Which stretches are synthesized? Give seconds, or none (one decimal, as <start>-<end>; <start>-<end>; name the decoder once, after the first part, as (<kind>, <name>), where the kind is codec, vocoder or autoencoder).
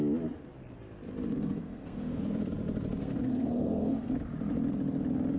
1.3-2.2 (codec, SNAC); 3.0-4.1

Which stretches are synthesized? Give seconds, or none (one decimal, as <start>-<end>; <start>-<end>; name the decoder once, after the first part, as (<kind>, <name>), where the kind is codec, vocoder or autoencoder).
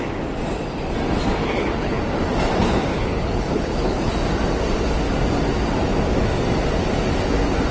1.4-2.0 (codec, HILCodec); 2.9-4.1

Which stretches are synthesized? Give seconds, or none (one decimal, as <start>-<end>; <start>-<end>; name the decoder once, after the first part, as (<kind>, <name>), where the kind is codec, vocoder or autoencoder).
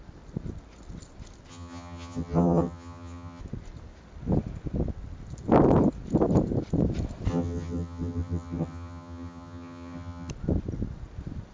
1.5-3.4 (vocoder, HiFi-GAN); 7.3-10.3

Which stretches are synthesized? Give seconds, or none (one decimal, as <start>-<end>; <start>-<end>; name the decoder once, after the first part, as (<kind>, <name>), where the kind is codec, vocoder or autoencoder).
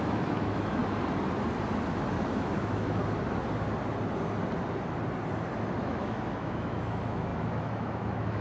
0.0-0.8 (autoencoder, DAC-VAE); 2.3-3.0; 5.8-8.4